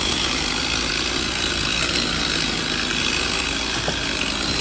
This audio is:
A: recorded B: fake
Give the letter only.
A